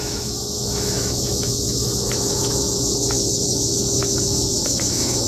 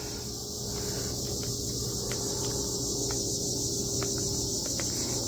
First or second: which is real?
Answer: second